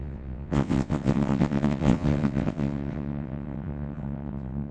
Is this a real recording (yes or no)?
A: no